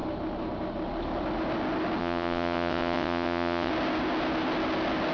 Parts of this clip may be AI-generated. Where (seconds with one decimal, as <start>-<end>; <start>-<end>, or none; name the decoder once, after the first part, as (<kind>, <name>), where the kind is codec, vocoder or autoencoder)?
2.0-3.7 (vocoder, WaveNeXt)